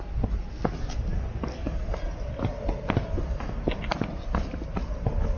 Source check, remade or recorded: recorded